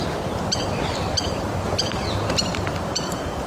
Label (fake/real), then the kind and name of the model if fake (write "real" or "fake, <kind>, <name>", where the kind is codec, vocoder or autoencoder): fake, vocoder, BigVGAN v2